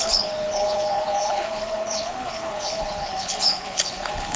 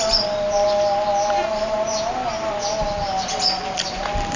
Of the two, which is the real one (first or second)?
second